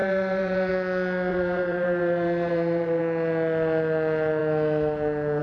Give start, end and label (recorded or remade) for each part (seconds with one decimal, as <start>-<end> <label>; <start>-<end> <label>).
0.0-0.7 remade; 0.7-1.3 recorded; 1.3-3.0 remade; 3.0-5.4 recorded